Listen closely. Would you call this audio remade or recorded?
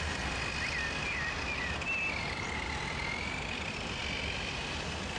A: recorded